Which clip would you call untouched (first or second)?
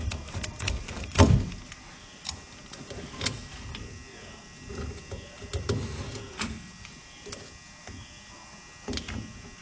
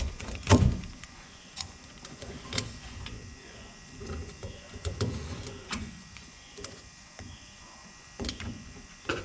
first